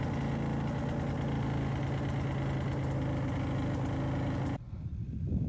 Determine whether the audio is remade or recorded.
recorded